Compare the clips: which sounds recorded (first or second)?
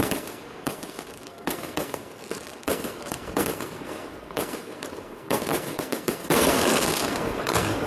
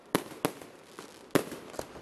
second